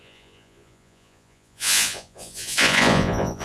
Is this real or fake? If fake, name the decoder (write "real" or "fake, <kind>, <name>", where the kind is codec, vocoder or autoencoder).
fake, vocoder, Vocos